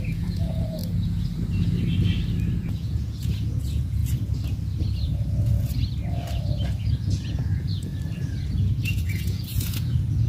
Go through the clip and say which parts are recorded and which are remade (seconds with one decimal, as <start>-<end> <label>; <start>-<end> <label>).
0.0-0.8 remade; 0.8-2.6 recorded; 2.6-4.0 remade; 4.0-6.9 recorded; 6.9-7.9 remade; 7.9-8.6 recorded; 8.6-10.3 remade